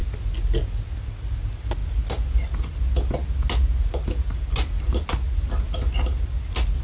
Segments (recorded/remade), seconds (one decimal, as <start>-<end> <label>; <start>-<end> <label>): 0.0-6.8 recorded